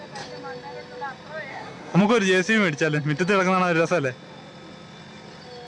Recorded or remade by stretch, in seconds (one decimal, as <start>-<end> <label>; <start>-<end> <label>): 0.0-1.5 recorded; 1.5-2.0 remade; 2.0-5.7 recorded